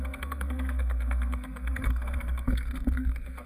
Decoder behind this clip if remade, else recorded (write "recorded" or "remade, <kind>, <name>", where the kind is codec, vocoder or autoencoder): remade, codec, SNAC